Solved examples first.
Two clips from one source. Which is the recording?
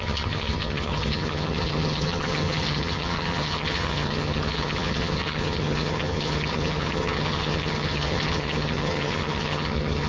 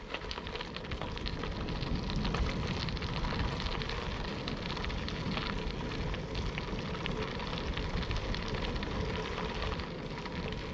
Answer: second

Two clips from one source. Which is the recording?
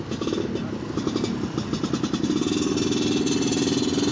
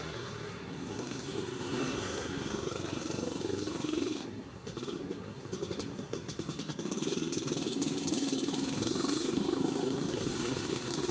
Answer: first